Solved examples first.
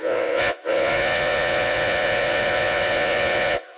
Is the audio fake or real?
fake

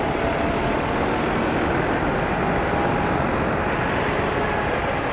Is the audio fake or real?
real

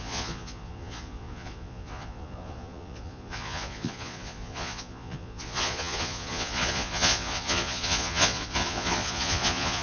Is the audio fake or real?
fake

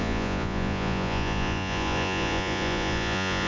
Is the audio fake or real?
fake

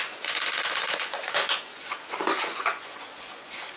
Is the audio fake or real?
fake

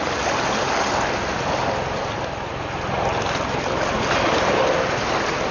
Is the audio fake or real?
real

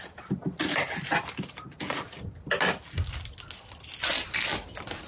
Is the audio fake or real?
real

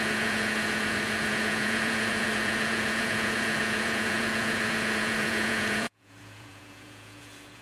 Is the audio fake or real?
fake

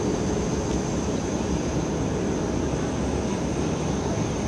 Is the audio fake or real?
real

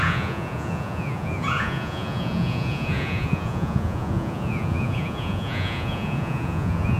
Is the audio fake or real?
fake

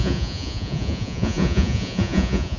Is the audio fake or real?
fake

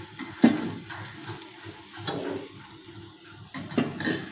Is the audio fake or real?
real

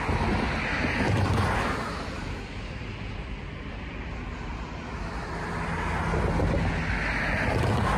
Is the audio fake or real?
real